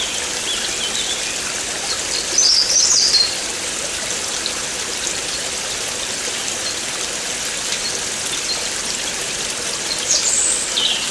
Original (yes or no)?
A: yes